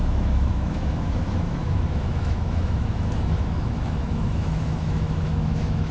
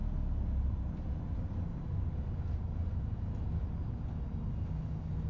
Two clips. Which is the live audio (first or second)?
second